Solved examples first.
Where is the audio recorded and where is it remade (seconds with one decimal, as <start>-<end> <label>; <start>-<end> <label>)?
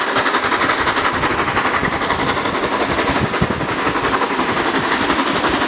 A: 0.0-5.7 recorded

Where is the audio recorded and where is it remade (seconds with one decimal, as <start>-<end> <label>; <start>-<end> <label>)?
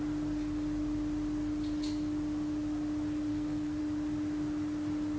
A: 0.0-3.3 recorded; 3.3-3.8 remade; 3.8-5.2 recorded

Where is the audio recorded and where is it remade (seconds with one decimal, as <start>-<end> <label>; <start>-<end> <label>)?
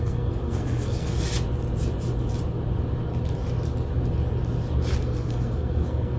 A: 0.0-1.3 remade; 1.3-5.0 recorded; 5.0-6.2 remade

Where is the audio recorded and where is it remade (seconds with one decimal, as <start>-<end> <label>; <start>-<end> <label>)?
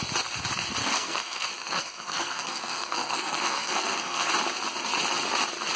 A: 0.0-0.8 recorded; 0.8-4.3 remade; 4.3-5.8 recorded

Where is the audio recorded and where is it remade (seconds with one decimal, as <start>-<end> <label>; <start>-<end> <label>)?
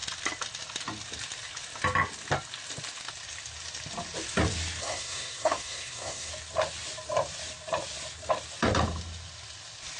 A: 0.0-4.8 recorded; 4.8-6.3 remade; 6.3-10.0 recorded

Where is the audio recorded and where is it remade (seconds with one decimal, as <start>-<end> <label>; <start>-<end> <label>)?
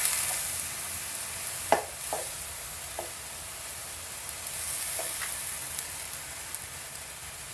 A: 0.0-7.5 recorded